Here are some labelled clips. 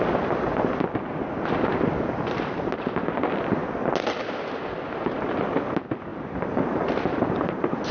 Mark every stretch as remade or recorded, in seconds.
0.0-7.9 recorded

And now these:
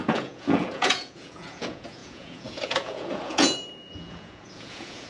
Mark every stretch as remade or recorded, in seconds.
0.0-5.1 remade